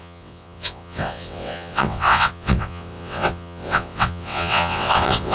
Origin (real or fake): fake